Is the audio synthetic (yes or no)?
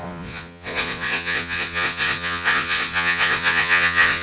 yes